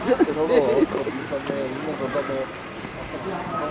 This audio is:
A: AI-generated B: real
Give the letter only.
B